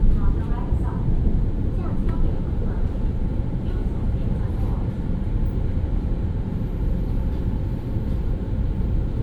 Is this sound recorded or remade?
remade